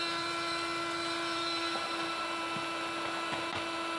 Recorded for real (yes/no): no